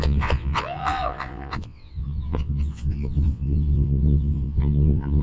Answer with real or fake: fake